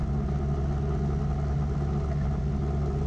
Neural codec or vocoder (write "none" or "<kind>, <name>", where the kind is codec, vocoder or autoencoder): none